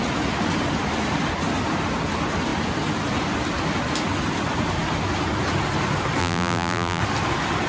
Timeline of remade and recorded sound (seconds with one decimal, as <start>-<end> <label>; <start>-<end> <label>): 0.0-6.2 recorded; 6.2-7.0 remade; 7.0-7.7 recorded